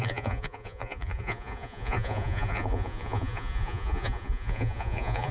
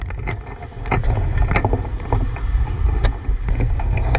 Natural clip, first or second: second